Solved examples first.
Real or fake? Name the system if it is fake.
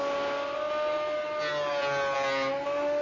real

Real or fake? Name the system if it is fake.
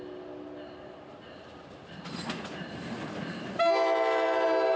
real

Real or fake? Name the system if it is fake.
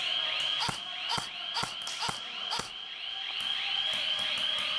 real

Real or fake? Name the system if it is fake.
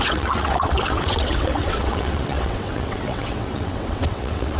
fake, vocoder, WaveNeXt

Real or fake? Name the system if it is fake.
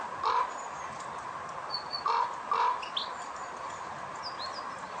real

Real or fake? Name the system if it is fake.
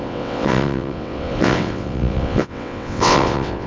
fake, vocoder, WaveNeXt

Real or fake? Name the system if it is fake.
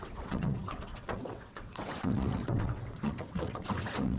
fake, vocoder, WaveNeXt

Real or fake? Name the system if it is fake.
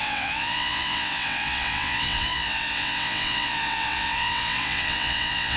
fake, vocoder, WaveNeXt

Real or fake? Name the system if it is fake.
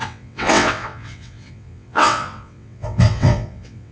fake, vocoder, WaveNeXt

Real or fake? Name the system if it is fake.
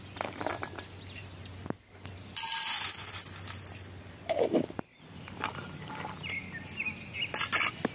real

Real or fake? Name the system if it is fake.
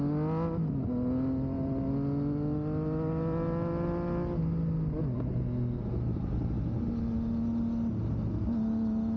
real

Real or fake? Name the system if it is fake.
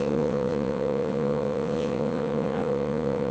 fake, vocoder, WaveNeXt